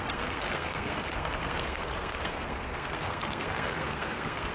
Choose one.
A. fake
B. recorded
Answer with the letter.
A